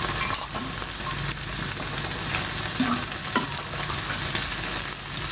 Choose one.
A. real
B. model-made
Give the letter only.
A